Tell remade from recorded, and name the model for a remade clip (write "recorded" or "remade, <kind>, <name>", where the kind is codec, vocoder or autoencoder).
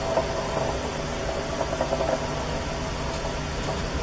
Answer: recorded